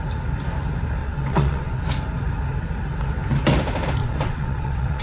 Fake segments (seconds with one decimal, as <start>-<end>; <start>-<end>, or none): 1.0-1.8; 4.0-5.0